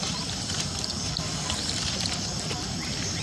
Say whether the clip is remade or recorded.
remade